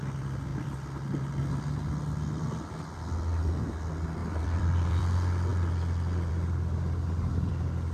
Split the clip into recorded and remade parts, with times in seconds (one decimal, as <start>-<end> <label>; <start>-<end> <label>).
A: 0.0-0.5 recorded; 0.5-1.4 remade; 1.4-4.2 recorded; 4.2-5.0 remade; 5.0-7.9 recorded